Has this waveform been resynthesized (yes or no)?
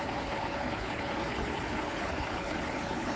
yes